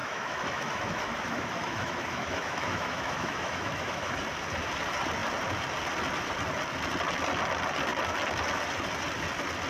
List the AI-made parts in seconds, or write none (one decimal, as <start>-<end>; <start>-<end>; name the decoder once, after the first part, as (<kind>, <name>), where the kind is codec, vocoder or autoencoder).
0.0-4.1 (autoencoder, DAC-VAE)